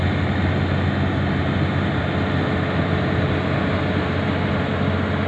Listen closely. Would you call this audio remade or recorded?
recorded